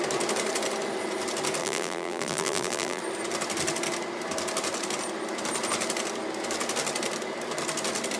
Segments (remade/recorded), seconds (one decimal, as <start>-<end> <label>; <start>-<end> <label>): 0.0-1.6 recorded; 1.6-3.0 remade; 3.0-8.2 recorded